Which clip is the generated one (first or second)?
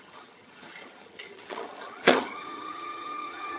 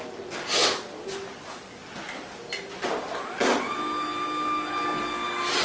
first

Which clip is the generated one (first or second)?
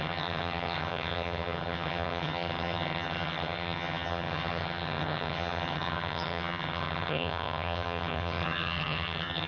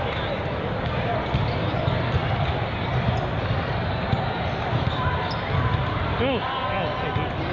first